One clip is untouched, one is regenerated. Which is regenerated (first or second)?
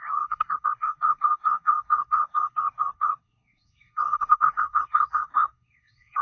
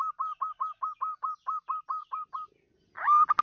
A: first